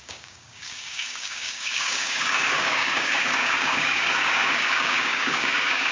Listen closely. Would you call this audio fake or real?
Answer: fake